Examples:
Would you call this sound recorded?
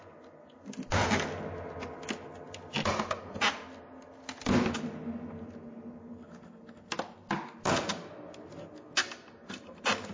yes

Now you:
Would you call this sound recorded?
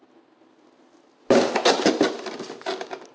yes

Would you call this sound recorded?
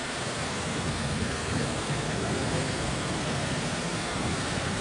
no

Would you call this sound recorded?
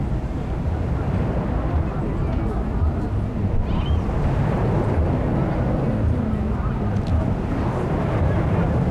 yes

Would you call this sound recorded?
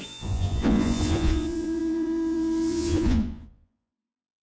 no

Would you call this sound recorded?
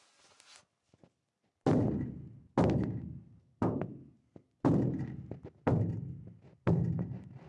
yes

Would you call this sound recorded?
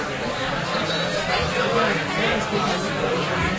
yes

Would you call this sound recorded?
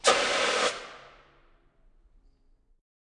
yes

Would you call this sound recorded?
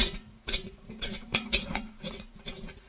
no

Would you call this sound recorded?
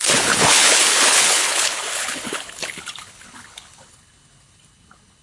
no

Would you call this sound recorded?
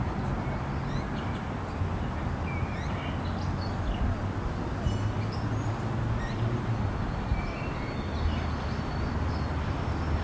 yes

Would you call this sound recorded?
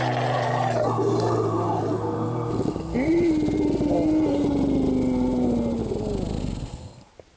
yes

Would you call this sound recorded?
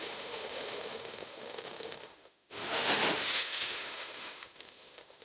no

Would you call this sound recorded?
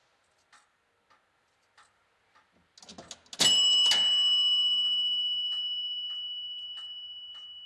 yes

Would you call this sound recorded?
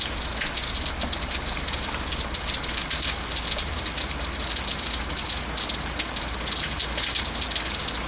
yes